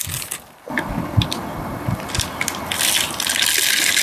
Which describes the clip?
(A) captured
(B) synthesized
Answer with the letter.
A